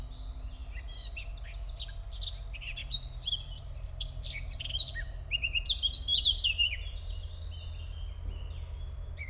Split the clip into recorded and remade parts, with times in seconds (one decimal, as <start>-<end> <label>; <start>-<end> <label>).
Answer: 0.0-2.8 recorded; 2.8-4.6 remade; 4.6-9.3 recorded